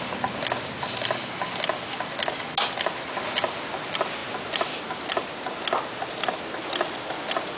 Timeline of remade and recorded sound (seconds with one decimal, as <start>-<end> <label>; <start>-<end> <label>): 0.0-7.6 recorded